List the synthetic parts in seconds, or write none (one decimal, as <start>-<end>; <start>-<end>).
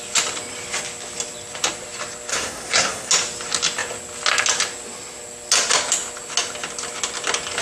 2.3-3.1